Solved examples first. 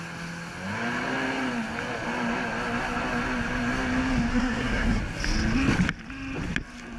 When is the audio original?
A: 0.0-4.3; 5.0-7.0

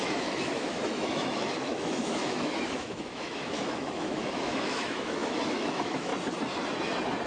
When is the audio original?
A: 6.1-7.3

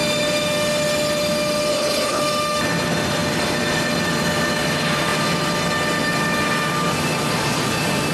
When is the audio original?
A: 0.0-1.7; 2.2-8.1